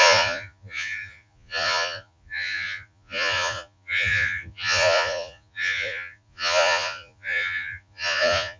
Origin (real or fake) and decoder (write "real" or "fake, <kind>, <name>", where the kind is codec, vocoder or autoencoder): fake, vocoder, Vocos